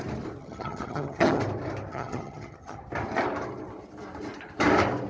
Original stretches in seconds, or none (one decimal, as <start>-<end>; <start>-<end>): 0.0-0.4; 1.4-1.9; 2.8-5.1

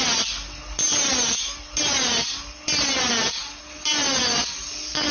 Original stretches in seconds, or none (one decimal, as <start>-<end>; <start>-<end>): 0.0-5.1

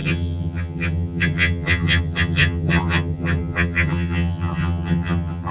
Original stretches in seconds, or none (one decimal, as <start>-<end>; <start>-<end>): none

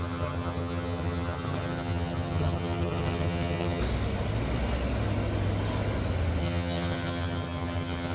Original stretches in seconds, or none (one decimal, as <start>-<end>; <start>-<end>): 3.8-6.4

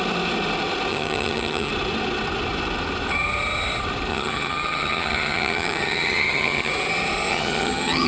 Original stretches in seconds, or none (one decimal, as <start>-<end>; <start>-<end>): 0.0-0.9; 1.7-4.1; 6.7-7.3

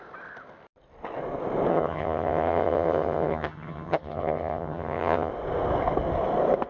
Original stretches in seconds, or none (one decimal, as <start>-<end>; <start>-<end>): 0.0-1.7; 5.3-6.7

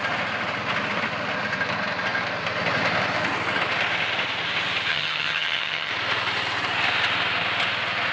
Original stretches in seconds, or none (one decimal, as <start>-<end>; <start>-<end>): 0.0-4.9; 5.9-8.1

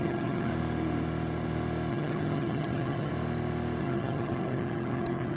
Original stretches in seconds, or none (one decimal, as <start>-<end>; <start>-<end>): 0.5-1.9; 3.1-3.8